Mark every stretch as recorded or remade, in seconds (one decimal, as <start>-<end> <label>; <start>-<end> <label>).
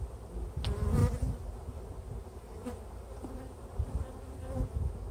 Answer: 0.0-1.0 recorded; 1.0-4.1 remade; 4.1-5.1 recorded